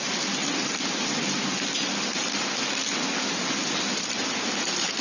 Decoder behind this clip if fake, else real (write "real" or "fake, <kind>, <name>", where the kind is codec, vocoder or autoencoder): real